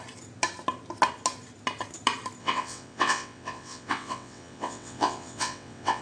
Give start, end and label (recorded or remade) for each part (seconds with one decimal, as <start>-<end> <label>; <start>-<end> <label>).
0.0-2.4 recorded; 2.4-6.0 remade